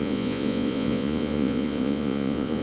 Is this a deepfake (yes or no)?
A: yes